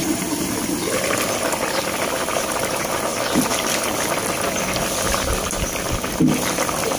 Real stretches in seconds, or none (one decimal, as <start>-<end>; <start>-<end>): 0.0-7.0